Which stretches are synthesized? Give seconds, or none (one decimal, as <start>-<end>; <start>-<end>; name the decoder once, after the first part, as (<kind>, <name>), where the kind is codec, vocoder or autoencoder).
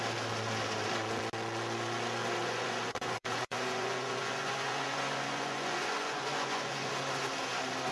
2.2-6.9 (vocoder, Vocos)